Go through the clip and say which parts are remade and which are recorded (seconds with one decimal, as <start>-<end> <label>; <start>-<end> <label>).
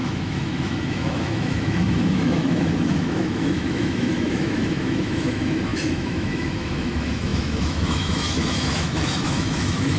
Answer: 0.0-10.0 remade